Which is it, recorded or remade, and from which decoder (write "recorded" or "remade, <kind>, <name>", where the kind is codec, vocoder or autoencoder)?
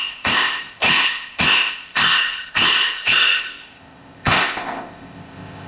remade, codec, ZipCodec